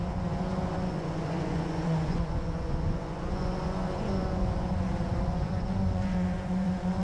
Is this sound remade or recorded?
remade